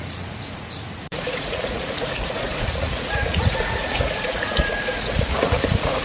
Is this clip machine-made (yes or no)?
yes